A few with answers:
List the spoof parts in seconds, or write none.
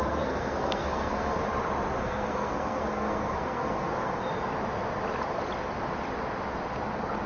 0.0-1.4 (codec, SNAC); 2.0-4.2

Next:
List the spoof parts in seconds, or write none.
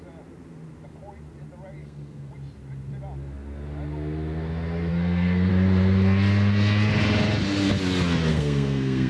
1.8-2.3 (codec, SNAC); 4.9-5.5; 8.3-9.1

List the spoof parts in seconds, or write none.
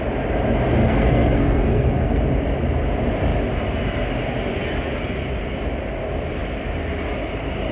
0.8-2.2 (codec, SNAC)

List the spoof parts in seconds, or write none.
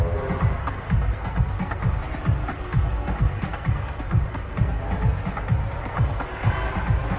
0.6-2.0 (codec, SNAC); 2.5-4.8; 5.8-6.7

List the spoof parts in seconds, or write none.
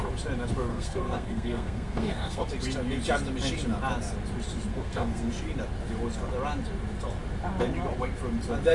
0.7-2.5 (codec, SNAC); 4.7-5.3